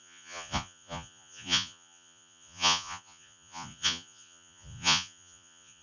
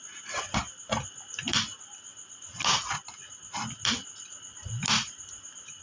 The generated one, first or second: first